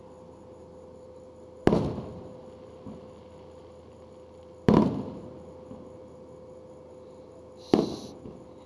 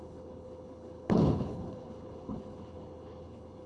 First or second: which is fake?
second